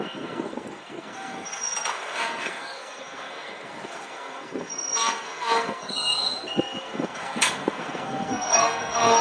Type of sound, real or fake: fake